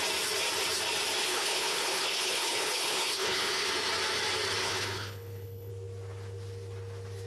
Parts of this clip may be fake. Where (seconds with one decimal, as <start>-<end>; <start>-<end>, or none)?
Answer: 1.2-3.7; 4.6-5.7

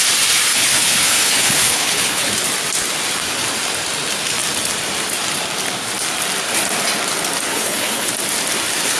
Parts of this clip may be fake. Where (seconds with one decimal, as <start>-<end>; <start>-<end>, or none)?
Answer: 0.5-2.3; 7.5-8.1

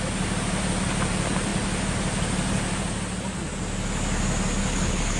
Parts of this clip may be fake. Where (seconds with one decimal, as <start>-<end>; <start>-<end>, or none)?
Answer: 4.6-5.2

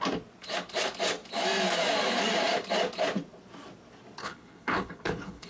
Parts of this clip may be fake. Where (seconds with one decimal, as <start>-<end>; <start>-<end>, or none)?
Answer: 4.2-5.5

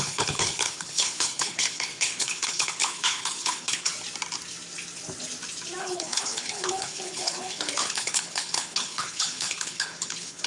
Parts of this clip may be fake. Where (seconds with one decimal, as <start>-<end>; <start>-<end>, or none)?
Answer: 0.0-3.9; 5.8-10.5

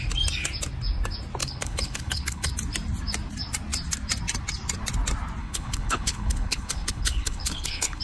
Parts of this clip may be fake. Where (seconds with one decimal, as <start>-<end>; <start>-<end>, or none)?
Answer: 1.4-2.5; 5.4-8.0

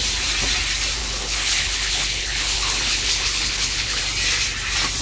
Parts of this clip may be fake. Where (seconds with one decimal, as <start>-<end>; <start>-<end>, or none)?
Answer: 1.0-4.0

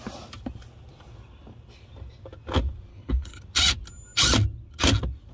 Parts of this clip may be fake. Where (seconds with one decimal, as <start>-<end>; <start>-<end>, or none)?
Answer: 2.9-3.4